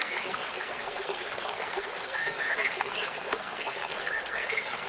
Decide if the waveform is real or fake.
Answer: fake